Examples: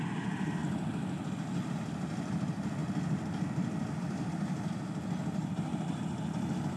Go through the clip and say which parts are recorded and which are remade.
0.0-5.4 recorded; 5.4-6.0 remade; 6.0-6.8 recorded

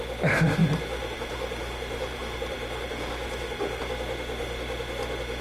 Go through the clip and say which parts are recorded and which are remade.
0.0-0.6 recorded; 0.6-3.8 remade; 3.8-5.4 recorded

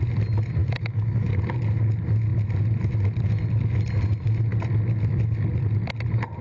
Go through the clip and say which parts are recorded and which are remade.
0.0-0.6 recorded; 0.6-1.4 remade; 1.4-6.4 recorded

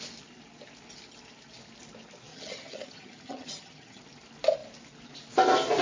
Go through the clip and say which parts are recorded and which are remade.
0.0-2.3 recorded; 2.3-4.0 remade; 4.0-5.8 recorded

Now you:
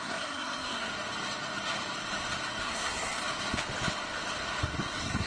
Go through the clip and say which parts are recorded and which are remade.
0.0-0.9 remade; 0.9-2.6 recorded; 2.6-3.2 remade; 3.2-4.6 recorded; 4.6-5.3 remade

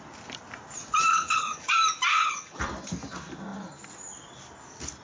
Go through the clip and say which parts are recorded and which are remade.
0.0-1.1 recorded; 1.1-1.7 remade; 1.7-2.1 recorded; 2.1-2.6 remade; 2.6-5.0 recorded

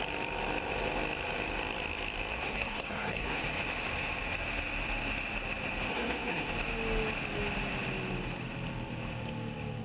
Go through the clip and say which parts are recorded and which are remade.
0.0-2.3 recorded; 2.3-3.4 remade; 3.4-5.9 recorded; 5.9-6.5 remade; 6.5-9.8 recorded